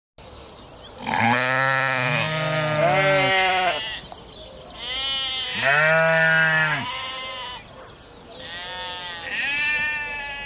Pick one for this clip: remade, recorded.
recorded